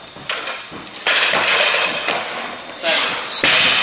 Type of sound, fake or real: real